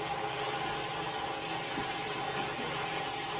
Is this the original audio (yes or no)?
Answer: yes